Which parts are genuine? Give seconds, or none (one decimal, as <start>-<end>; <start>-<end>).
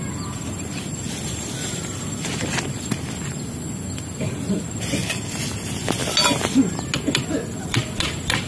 0.0-8.5